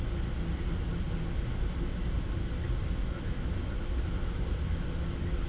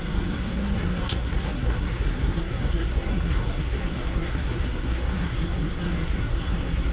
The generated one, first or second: second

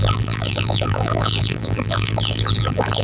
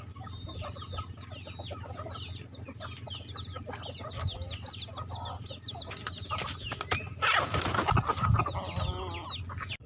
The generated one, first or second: first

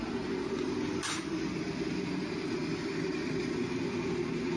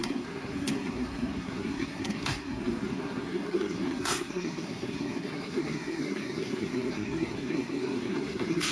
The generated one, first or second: second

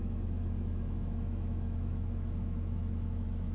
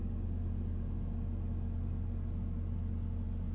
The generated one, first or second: first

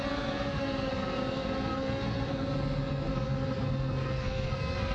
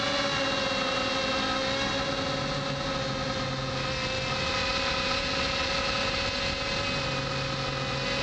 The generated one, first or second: first